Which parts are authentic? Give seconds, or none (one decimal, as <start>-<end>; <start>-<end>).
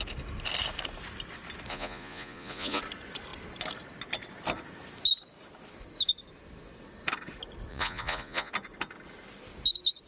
0.0-1.7; 2.8-7.7; 8.5-10.1